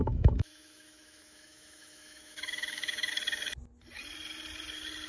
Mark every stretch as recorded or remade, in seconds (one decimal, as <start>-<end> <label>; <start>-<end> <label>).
0.0-3.1 remade; 3.1-5.1 recorded